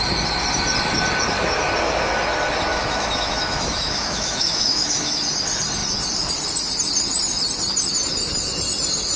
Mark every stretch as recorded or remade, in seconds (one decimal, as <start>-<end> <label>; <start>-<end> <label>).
0.0-2.7 recorded; 2.7-5.2 remade; 5.2-9.2 recorded